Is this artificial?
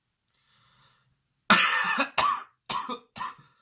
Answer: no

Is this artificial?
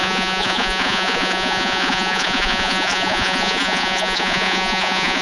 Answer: yes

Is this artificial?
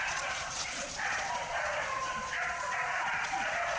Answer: yes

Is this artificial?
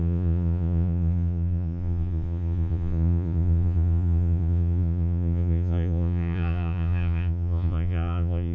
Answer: yes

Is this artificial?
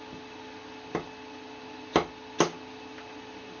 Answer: no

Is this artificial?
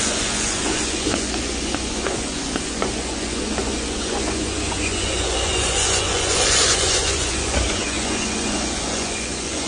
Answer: yes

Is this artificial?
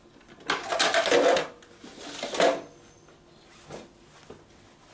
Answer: no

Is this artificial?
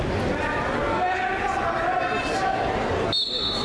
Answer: no